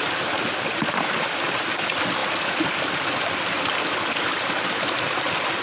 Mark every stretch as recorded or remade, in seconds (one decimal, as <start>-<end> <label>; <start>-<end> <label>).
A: 0.0-2.2 recorded; 2.2-5.6 remade